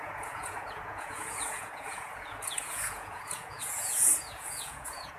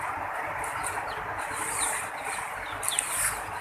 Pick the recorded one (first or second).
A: second